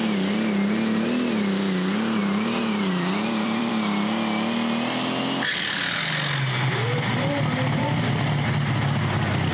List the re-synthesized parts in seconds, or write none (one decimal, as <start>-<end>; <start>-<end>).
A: 2.2-3.7